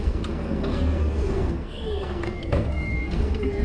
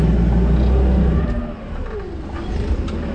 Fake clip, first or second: first